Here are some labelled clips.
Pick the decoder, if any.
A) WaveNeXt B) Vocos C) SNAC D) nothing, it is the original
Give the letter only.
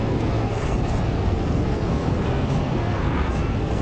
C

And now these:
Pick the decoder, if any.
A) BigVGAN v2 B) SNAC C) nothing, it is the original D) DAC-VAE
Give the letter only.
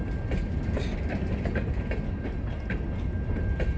C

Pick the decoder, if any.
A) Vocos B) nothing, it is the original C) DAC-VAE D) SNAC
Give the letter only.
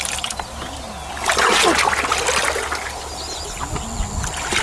B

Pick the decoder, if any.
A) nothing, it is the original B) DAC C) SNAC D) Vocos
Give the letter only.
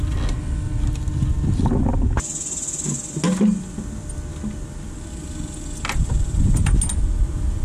A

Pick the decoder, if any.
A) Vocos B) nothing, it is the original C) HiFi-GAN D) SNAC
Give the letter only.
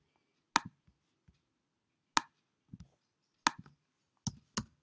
B